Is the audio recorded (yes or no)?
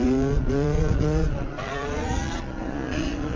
no